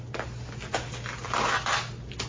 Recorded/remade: recorded